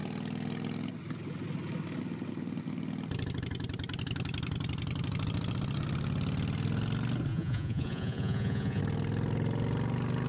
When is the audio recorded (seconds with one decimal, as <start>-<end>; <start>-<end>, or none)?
0.0-7.3; 8.8-10.3